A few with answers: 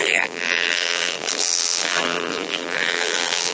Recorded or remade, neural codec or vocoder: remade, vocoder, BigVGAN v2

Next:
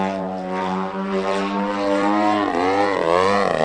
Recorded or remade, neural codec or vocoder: remade, vocoder, BigVGAN v2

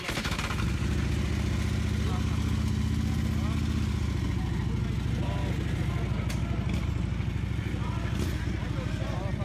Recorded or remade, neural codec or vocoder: recorded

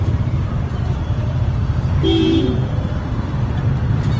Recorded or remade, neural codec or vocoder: remade, vocoder, BigVGAN v2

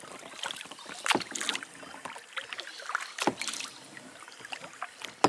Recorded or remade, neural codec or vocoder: recorded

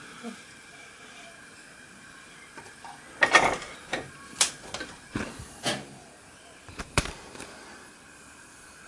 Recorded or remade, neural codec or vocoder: remade, vocoder, BigVGAN v2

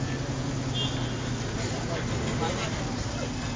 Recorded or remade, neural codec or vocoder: recorded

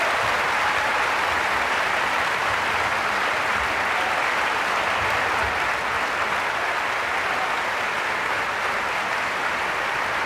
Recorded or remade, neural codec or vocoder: recorded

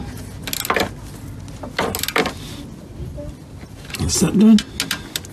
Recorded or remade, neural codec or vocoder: recorded